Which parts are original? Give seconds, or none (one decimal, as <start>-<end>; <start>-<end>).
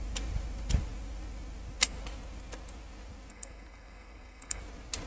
0.0-3.3; 4.6-5.1